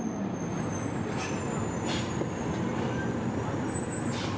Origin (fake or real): real